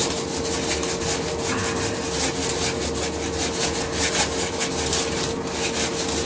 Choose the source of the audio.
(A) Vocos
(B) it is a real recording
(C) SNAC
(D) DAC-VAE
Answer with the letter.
B